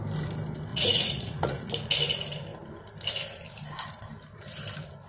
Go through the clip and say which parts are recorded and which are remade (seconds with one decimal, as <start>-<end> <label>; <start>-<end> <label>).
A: 0.0-0.7 recorded; 0.7-1.7 remade; 1.7-5.1 recorded